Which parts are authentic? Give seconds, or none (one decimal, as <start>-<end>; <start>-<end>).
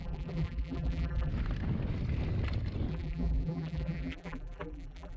1.3-2.9